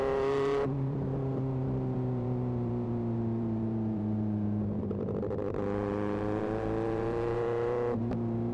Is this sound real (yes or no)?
no